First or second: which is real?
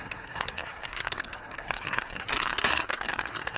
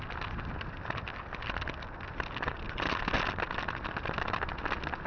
second